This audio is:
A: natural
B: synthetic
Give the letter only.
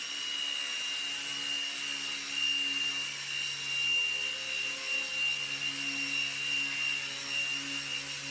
A